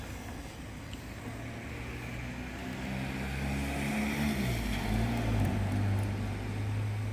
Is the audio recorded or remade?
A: recorded